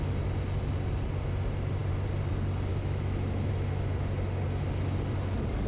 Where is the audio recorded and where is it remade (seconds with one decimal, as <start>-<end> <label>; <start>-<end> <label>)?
0.0-2.7 recorded; 2.7-3.5 remade; 3.5-5.7 recorded